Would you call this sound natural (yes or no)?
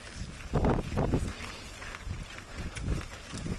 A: yes